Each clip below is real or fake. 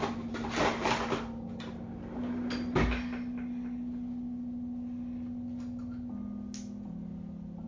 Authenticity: real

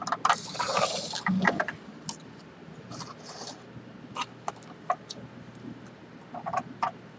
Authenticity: real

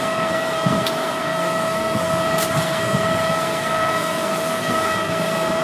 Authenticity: fake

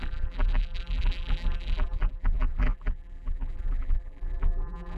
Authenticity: fake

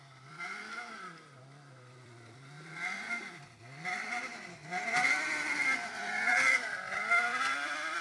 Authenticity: fake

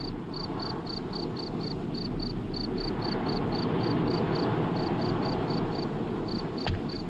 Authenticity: real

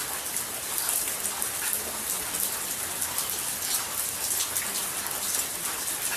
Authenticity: real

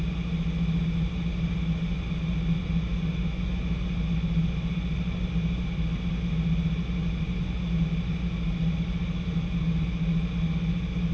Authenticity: real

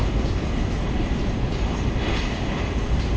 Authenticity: fake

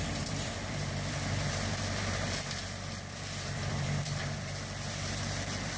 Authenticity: fake